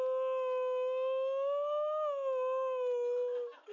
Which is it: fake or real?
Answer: real